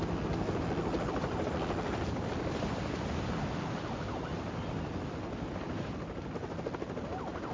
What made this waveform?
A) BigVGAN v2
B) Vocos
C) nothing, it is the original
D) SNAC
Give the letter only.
C